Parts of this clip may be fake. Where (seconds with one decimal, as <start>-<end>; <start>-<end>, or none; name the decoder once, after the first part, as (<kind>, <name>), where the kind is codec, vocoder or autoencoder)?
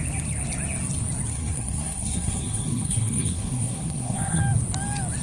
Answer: 1.3-4.4 (codec, SNAC)